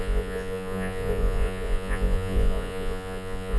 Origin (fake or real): fake